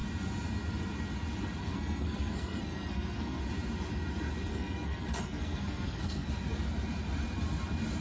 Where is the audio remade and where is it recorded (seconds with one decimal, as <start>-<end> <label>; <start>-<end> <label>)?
0.0-1.6 recorded; 1.6-3.4 remade; 3.4-4.5 recorded; 4.5-6.3 remade; 6.3-8.0 recorded